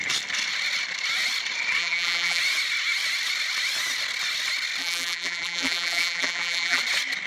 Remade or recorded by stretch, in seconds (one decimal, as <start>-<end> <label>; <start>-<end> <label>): 0.0-1.8 recorded; 1.8-2.4 remade; 2.4-4.8 recorded; 4.8-6.8 remade; 6.8-7.3 recorded